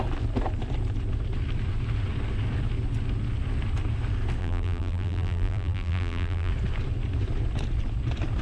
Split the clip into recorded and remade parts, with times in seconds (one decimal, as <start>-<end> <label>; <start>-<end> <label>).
0.0-4.4 recorded; 4.4-6.5 remade; 6.5-8.4 recorded